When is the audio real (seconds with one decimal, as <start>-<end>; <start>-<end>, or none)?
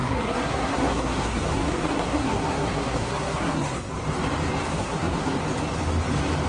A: 3.9-4.7; 5.4-6.5